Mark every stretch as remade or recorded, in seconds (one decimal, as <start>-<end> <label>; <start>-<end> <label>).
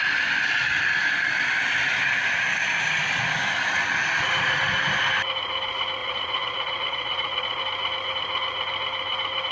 0.0-6.0 recorded; 6.0-7.6 remade; 7.6-9.5 recorded